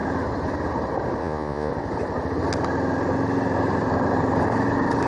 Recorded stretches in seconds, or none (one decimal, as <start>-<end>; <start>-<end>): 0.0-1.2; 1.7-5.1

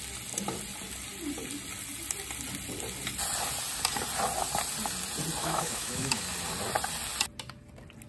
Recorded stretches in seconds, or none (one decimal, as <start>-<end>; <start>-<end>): 0.0-5.4; 6.2-8.1

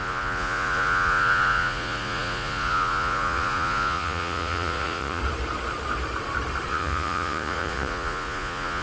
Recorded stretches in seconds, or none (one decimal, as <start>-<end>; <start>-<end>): 5.2-6.7